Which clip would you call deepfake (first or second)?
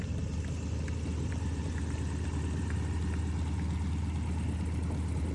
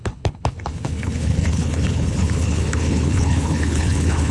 second